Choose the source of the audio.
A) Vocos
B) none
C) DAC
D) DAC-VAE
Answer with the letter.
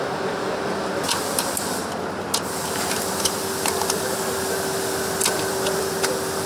B